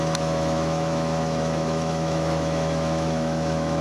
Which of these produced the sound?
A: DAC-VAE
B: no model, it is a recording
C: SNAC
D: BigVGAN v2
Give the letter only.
A